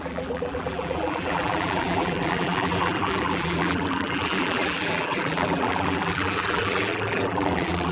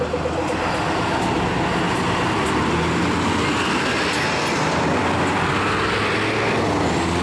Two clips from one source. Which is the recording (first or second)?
second